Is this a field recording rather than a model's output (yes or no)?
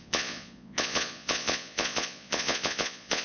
no